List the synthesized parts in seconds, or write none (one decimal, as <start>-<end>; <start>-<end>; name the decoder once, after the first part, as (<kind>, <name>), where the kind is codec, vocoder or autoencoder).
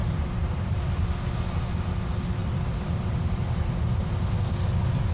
0.0-0.9 (vocoder, BigVGAN v2); 2.4-4.1